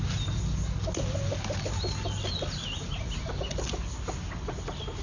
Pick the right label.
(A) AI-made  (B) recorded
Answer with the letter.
B